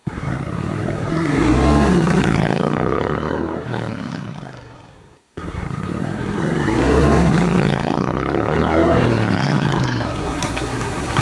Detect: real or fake fake